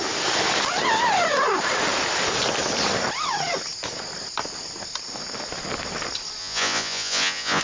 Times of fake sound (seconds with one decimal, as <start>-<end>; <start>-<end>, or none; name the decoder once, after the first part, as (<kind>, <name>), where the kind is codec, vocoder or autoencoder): 6.4-7.6 (vocoder, Vocos)